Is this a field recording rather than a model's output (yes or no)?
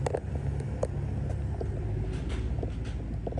yes